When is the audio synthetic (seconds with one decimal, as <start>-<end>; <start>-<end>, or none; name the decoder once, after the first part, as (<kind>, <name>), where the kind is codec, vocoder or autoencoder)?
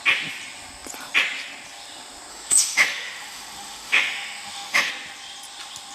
2.3-4.9 (autoencoder, DAC-VAE)